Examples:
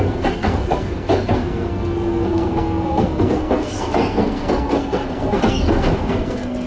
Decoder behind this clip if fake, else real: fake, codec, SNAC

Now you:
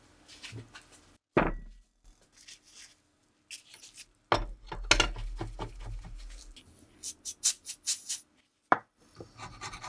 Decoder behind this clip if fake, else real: real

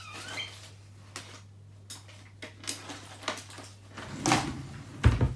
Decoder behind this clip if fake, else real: real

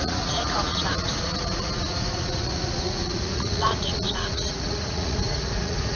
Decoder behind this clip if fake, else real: fake, vocoder, Vocos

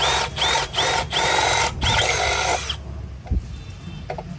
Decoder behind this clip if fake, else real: real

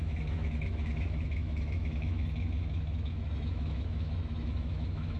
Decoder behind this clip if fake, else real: fake, autoencoder, DAC-VAE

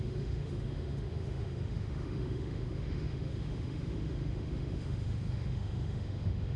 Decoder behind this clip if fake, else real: fake, autoencoder, DAC-VAE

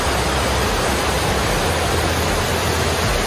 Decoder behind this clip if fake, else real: real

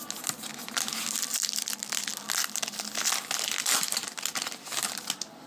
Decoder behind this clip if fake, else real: real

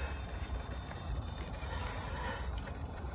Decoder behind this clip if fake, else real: fake, vocoder, BigVGAN v2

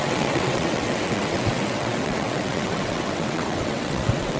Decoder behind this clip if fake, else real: fake, vocoder, WaveNeXt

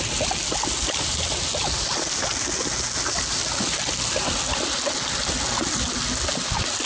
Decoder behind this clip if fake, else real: real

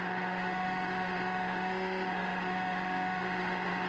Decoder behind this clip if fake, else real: fake, autoencoder, DAC-VAE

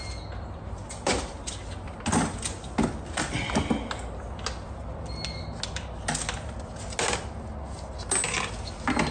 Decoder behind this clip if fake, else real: real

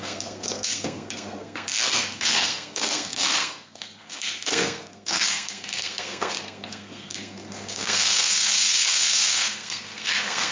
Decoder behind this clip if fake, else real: fake, codec, SNAC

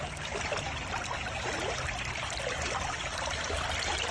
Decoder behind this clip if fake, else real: real